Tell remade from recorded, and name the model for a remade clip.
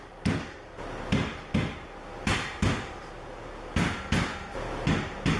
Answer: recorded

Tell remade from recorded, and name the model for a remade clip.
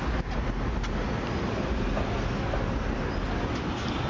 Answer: recorded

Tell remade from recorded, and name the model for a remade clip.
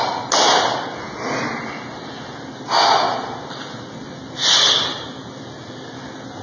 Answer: recorded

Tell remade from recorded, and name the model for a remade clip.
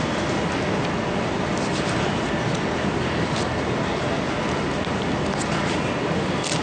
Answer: recorded